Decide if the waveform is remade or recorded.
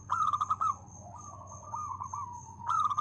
remade